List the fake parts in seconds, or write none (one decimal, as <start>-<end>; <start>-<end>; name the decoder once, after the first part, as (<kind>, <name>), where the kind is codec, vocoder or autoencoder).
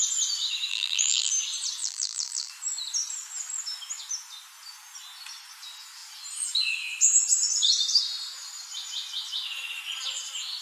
0.7-1.3 (vocoder, BigVGAN v2); 1.8-2.5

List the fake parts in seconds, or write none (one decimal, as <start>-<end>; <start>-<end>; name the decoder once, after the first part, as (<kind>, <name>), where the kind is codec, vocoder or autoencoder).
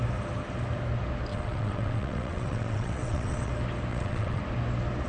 1.3-3.5 (vocoder, WaveNeXt); 3.9-4.4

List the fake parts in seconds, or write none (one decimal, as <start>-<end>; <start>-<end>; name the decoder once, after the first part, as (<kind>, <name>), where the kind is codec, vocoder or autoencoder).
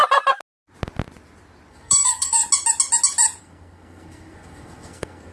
1.7-2.4 (codec, SNAC); 3.4-5.3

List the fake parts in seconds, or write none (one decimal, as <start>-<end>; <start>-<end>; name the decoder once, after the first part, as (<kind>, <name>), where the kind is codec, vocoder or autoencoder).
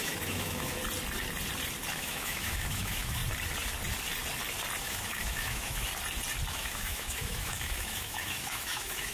0.0-0.8 (autoencoder, DAC-VAE); 1.9-3.2; 4.8-5.9; 6.5-9.1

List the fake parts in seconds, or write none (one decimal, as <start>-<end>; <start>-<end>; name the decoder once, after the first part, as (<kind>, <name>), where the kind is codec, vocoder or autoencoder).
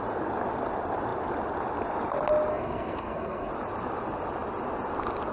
2.5-3.5 (codec, SNAC)